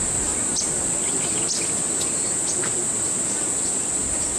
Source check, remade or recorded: recorded